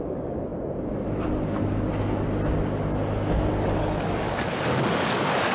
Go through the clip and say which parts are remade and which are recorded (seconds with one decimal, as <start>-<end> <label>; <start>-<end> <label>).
0.0-0.5 remade; 0.5-3.8 recorded; 3.8-5.5 remade